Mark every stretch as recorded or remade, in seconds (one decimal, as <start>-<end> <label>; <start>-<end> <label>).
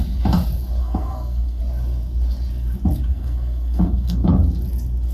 0.0-0.8 recorded; 0.8-1.6 remade; 1.6-3.1 recorded; 3.1-4.3 remade; 4.3-5.1 recorded